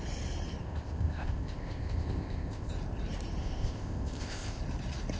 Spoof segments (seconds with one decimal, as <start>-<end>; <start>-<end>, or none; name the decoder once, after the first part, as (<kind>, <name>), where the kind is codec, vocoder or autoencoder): 0.6-2.7 (codec, ZipCodec); 3.4-4.6